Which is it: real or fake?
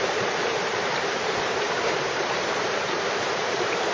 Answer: fake